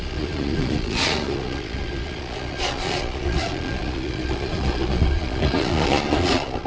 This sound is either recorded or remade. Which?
remade